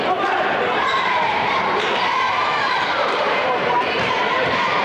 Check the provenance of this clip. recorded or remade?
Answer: remade